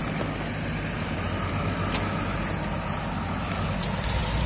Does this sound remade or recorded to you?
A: recorded